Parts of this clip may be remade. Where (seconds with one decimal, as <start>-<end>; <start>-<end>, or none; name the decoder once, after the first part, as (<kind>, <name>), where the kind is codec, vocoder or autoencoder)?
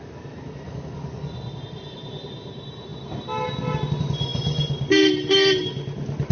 none